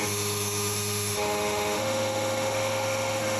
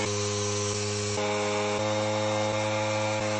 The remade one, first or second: first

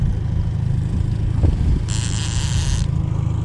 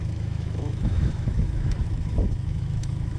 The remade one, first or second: second